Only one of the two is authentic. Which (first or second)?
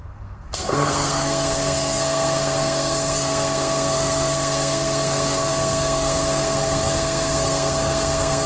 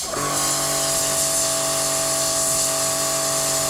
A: second